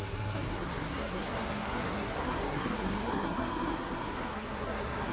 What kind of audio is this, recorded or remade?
remade